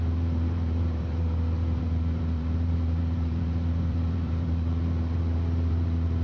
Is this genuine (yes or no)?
no